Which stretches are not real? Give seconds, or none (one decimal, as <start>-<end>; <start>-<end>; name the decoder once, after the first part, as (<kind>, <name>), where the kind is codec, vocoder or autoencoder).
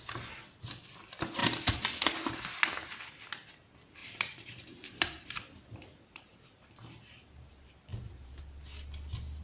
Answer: 4.0-7.5 (vocoder, BigVGAN v2); 7.9-8.4